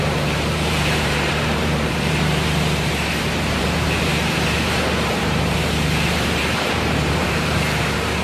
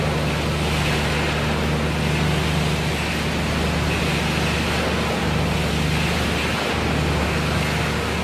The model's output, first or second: first